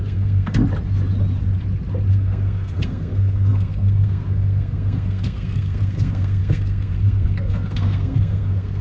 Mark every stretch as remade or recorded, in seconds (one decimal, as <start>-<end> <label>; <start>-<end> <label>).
0.0-0.6 remade; 0.6-2.1 recorded; 2.1-8.8 remade